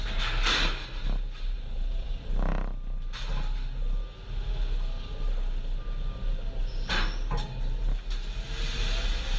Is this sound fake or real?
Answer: real